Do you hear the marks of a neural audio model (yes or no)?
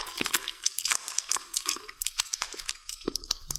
yes